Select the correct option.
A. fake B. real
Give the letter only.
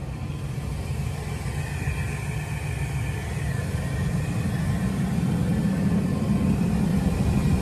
B